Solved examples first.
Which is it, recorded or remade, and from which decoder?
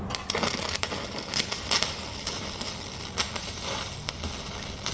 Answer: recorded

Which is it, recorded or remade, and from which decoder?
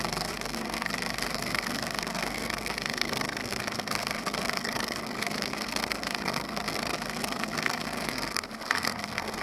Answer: remade, codec, SNAC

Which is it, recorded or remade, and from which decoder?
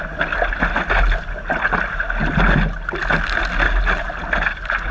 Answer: recorded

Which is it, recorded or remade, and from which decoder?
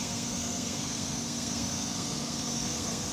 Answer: remade, codec, SNAC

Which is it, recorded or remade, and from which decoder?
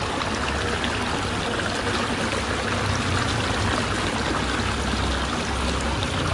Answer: recorded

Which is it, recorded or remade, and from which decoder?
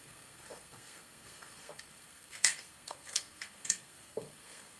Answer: remade, codec, SNAC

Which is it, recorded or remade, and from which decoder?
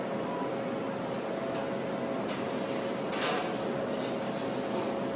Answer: recorded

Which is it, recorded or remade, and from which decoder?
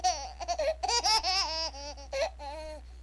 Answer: recorded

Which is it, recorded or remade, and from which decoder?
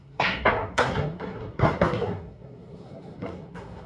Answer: remade, codec, SNAC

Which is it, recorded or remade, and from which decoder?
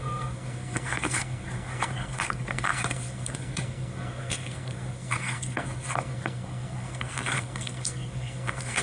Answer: remade, codec, SNAC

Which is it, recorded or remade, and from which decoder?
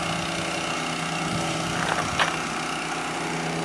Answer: recorded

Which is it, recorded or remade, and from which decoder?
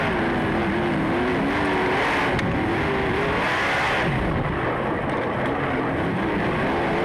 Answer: recorded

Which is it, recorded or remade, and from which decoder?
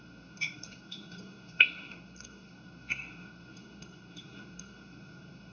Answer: remade, codec, SNAC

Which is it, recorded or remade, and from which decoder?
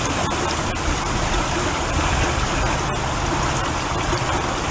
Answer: recorded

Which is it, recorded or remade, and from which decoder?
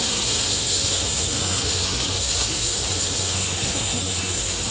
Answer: remade, codec, SNAC